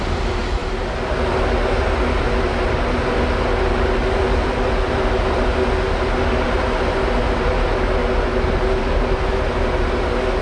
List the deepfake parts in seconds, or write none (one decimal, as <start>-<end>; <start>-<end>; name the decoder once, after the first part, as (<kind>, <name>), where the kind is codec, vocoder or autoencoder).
none